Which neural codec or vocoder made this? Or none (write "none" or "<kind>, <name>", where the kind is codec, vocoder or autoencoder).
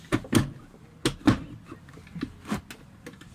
none